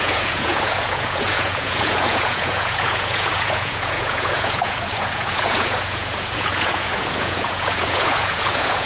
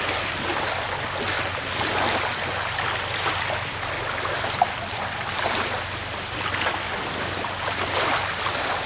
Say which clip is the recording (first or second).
second